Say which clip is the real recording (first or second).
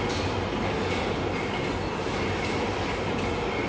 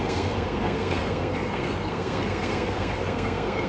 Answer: first